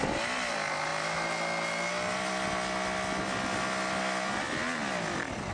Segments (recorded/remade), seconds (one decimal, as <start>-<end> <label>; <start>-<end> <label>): 0.0-5.5 recorded